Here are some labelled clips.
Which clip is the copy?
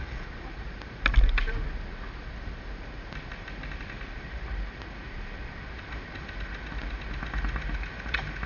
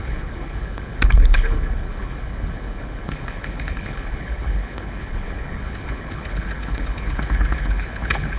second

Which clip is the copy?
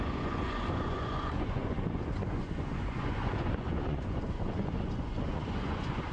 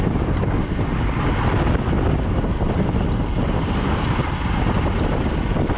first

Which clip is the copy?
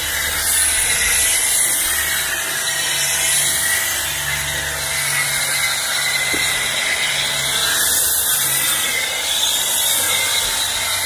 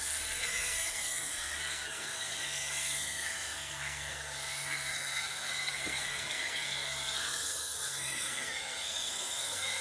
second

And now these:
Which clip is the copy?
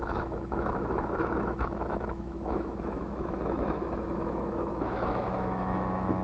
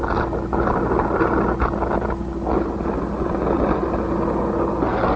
first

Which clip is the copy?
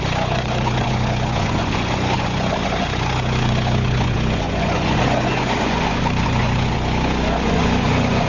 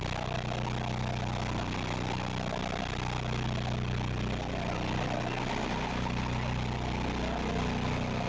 first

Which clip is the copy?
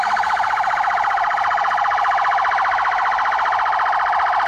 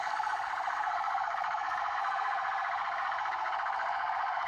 second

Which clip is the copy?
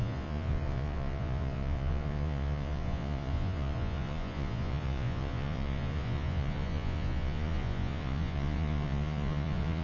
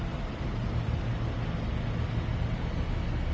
first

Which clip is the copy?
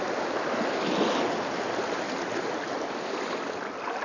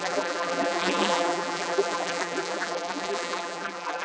second